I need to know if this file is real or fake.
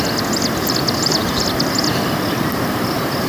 real